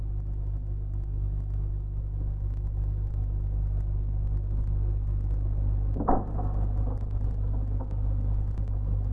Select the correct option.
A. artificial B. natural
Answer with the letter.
B